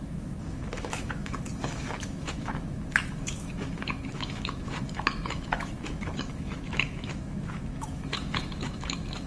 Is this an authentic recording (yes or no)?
no